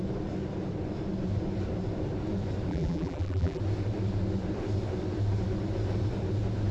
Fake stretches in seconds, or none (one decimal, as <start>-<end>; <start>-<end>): 2.7-3.6